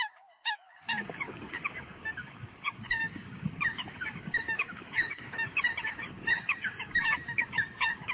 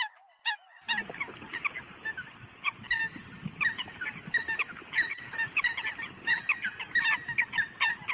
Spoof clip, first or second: first